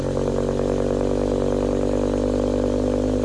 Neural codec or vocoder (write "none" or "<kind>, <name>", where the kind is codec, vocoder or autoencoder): none